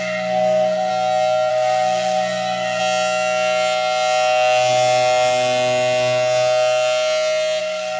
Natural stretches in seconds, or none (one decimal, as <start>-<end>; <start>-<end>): 0.9-1.5; 2.8-7.6

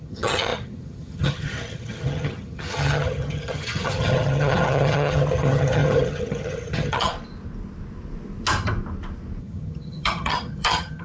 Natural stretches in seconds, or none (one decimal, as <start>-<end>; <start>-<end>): 7.1-9.4

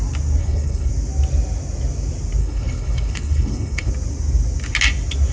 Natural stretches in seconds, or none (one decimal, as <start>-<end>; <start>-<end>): 0.0-0.4; 0.9-2.4; 3.9-5.3

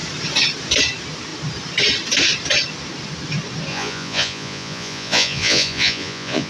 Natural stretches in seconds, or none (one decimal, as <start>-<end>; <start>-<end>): 0.0-3.7

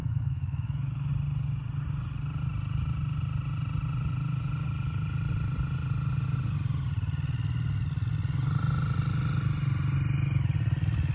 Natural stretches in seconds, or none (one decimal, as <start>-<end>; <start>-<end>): 1.1-11.1